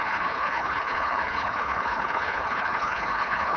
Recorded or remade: remade